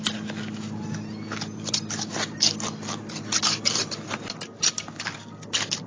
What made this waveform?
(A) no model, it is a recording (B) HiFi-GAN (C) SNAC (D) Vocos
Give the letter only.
A